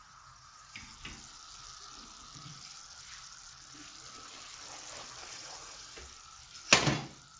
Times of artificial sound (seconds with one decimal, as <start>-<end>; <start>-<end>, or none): 0.0-0.9; 5.3-6.0